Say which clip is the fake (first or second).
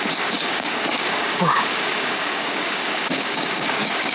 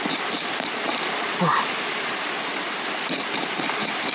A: first